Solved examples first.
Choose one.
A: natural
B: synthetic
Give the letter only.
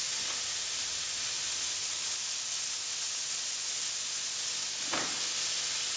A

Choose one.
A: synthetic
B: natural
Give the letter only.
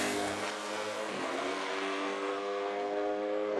A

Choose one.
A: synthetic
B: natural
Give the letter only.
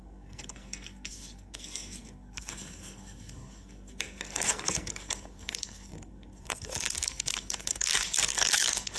A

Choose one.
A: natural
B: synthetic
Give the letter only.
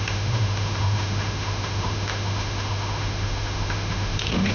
B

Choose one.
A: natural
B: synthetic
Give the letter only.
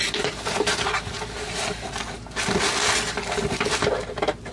A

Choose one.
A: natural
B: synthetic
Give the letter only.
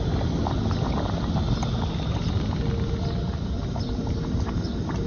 A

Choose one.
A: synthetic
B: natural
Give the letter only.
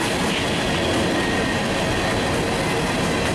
B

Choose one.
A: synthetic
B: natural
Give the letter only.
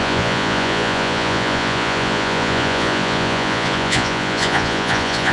A